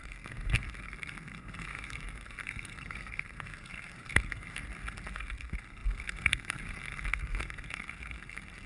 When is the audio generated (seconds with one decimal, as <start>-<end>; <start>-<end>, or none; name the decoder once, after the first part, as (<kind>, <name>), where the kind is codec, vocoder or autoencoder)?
0.0-8.7 (codec, SNAC)